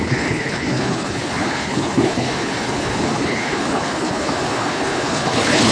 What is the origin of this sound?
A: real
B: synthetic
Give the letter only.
B